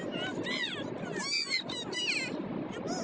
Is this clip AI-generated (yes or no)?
no